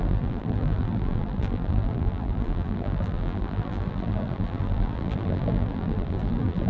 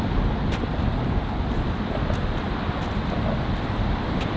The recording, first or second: second